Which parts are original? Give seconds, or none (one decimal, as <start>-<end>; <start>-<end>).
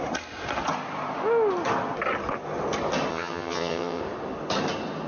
0.0-3.1; 4.0-5.1